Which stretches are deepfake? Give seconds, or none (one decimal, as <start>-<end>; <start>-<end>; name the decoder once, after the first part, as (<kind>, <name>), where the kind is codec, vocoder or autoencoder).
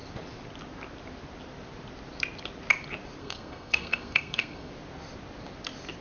3.2-4.7 (codec, SNAC)